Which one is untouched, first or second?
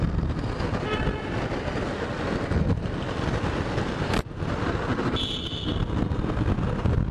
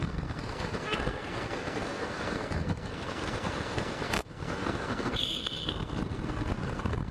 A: first